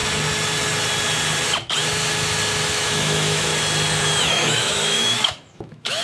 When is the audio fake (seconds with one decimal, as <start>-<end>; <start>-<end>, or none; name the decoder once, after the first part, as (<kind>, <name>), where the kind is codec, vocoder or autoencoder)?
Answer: 2.7-3.5 (autoencoder, DAC-VAE); 4.2-6.0